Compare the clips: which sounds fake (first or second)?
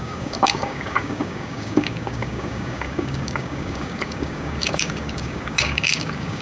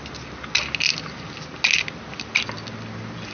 first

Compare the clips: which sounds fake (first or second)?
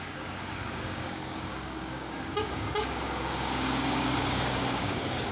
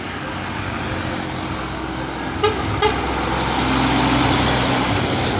first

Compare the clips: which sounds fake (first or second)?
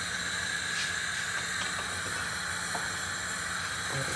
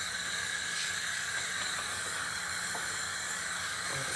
second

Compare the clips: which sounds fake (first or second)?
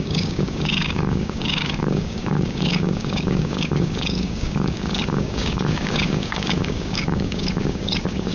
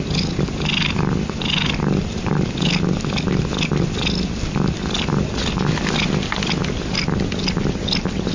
first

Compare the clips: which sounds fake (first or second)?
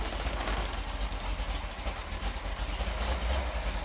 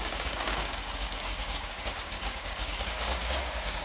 second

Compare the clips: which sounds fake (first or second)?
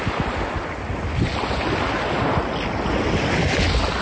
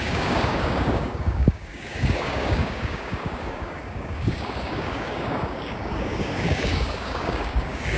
second